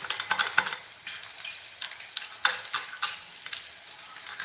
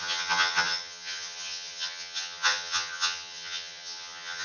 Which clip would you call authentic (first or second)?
first